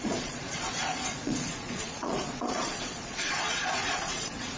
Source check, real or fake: fake